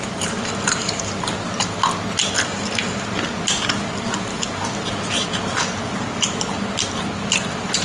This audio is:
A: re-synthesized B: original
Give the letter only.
B